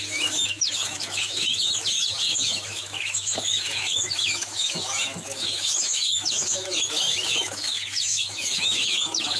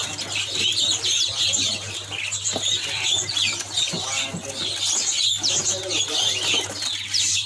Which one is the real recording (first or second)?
second